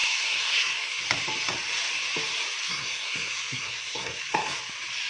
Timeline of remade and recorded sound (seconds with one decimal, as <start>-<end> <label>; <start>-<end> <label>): 0.0-1.0 remade; 1.0-2.6 recorded; 2.6-4.6 remade; 4.6-5.1 recorded